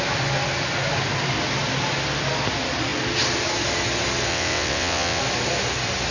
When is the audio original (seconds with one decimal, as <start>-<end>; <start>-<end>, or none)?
0.0-4.3; 5.2-6.1